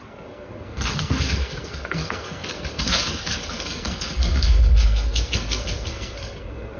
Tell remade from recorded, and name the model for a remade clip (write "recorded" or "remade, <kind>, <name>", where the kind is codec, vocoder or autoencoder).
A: remade, codec, SNAC